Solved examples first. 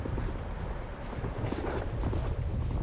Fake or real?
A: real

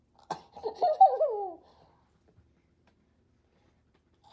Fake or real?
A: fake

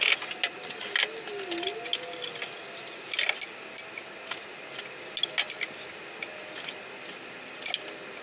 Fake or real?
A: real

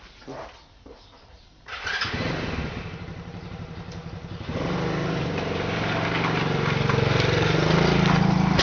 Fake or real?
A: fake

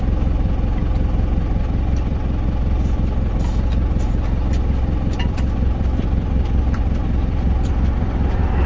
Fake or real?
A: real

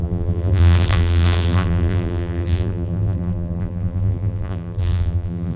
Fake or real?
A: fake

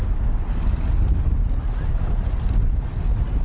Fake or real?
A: real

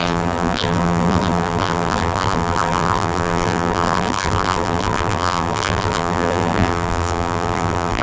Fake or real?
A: fake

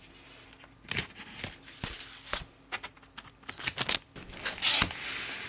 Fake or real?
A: real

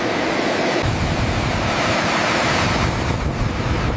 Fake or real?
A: real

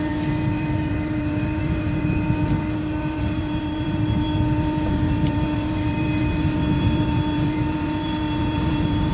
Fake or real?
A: fake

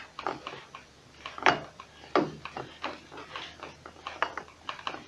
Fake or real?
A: real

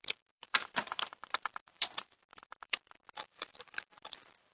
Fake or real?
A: fake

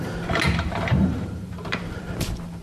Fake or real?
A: fake